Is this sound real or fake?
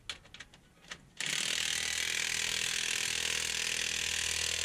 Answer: real